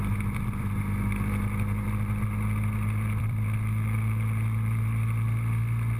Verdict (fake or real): fake